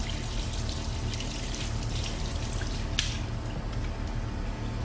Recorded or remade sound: recorded